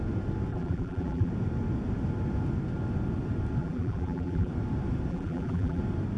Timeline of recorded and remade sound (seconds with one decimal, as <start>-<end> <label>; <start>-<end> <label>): 0.0-0.5 recorded; 0.5-1.3 remade; 1.3-3.6 recorded; 3.6-4.5 remade; 4.5-5.1 recorded; 5.1-5.8 remade; 5.8-6.2 recorded